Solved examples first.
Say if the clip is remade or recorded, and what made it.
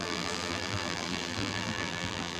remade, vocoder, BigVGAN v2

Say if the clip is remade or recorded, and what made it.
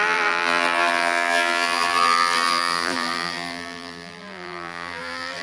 remade, vocoder, BigVGAN v2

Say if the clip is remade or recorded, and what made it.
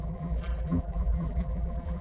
remade, vocoder, BigVGAN v2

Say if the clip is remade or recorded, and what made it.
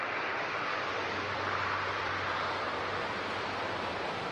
remade, vocoder, BigVGAN v2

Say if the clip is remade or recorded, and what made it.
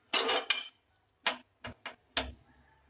recorded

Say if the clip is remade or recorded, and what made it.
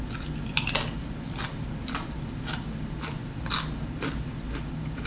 recorded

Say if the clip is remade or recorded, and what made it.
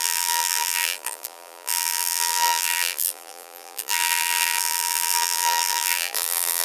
remade, vocoder, BigVGAN v2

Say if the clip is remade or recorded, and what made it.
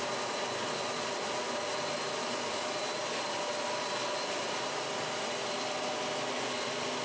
recorded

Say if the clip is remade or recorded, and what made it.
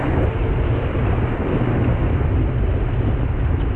recorded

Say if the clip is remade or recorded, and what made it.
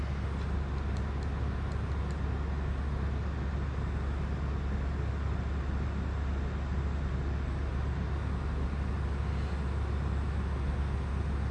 recorded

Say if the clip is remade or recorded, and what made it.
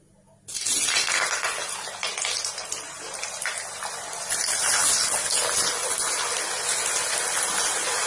recorded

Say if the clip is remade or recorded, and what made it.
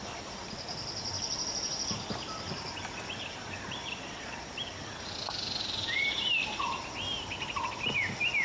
remade, vocoder, BigVGAN v2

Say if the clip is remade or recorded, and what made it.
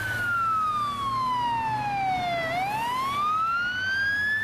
recorded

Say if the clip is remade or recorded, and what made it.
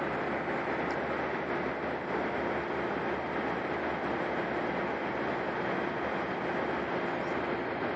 recorded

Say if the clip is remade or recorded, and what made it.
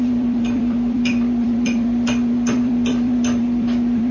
remade, vocoder, BigVGAN v2